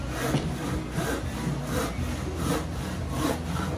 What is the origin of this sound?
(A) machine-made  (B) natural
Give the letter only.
B